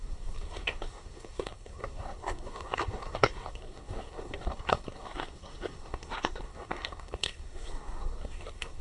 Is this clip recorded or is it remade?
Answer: remade